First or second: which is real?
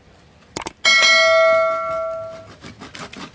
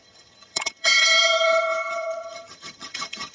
first